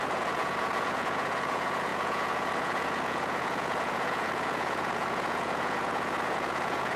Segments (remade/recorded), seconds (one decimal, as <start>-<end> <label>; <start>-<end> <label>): 0.0-7.0 remade